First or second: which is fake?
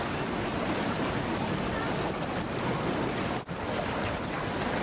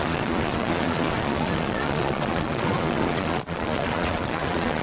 second